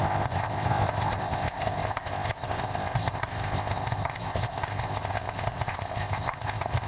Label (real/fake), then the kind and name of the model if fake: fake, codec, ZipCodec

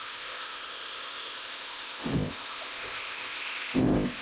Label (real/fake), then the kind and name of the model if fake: fake, codec, ZipCodec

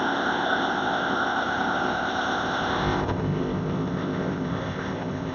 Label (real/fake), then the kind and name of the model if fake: fake, codec, ZipCodec